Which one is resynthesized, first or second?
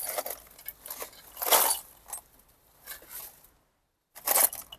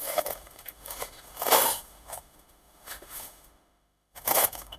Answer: second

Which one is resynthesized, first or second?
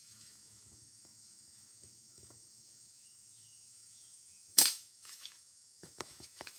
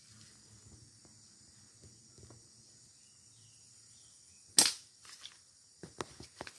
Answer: first